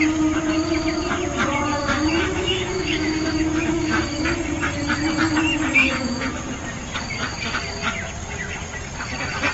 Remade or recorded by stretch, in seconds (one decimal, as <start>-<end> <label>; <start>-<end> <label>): 0.0-1.7 recorded; 1.7-4.0 remade; 4.0-5.8 recorded; 5.8-6.4 remade; 6.4-9.5 recorded